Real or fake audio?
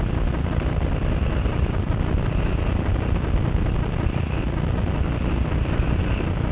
real